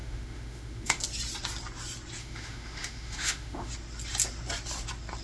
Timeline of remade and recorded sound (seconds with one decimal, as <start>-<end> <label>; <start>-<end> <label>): 0.0-1.0 remade; 1.0-2.2 recorded; 2.2-3.7 remade; 3.7-5.2 recorded